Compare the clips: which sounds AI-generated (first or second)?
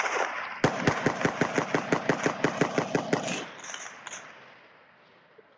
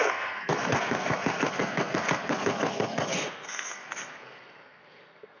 second